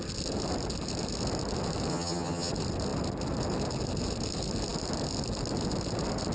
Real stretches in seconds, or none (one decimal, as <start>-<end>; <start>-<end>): 0.0-1.9; 2.5-6.3